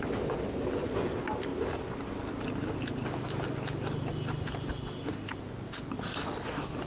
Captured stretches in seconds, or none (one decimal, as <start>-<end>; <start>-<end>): 0.0-6.9